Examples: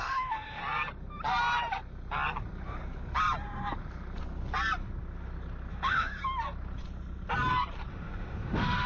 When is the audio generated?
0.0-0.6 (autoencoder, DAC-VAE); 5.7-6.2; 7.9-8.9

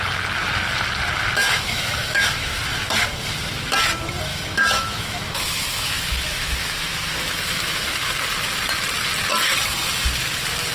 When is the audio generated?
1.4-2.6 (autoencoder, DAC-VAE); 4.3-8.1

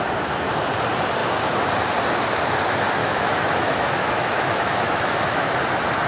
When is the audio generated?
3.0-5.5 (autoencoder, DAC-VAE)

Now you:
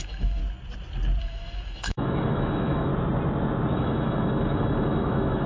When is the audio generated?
0.0-0.4 (autoencoder, DAC-VAE); 1.2-2.9; 3.7-5.5